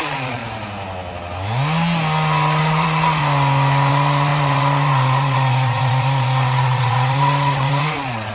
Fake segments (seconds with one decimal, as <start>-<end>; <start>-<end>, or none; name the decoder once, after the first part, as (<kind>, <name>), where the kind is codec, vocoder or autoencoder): 0.0-0.4 (vocoder, Vocos); 2.6-3.2; 3.9-8.3